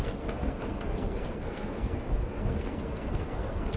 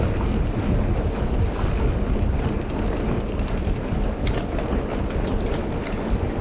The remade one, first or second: first